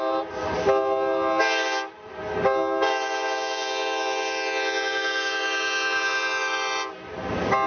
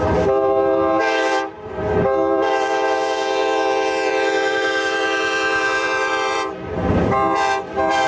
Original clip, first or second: first